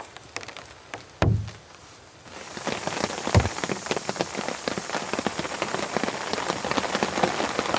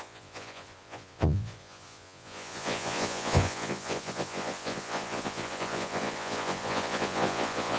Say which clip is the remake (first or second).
second